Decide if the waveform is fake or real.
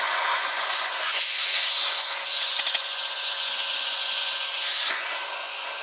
fake